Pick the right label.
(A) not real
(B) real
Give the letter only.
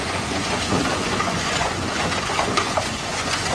A